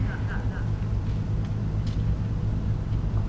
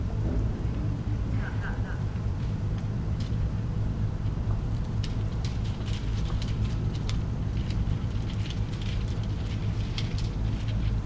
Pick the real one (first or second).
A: first